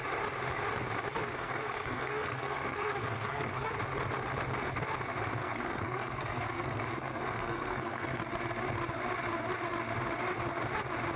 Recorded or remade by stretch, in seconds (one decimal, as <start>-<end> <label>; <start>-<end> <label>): 0.0-1.2 recorded; 1.2-3.7 remade; 3.7-5.4 recorded; 5.4-8.2 remade; 8.2-11.2 recorded